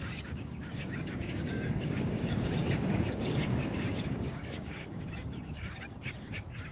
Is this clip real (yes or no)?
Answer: no